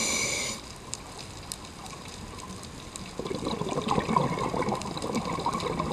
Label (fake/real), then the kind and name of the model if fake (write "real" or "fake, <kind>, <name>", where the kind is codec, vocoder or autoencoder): real